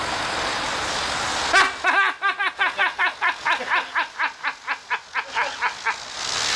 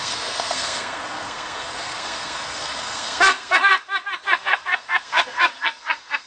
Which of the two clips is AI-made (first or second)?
second